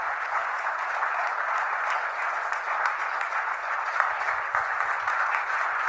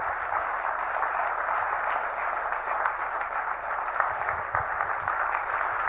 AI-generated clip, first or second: first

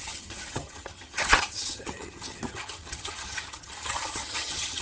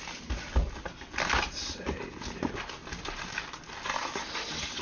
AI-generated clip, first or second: first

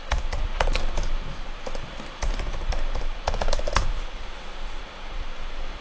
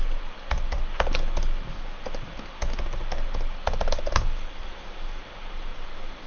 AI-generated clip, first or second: first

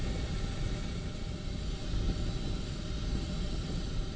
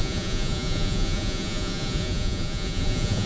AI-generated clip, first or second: second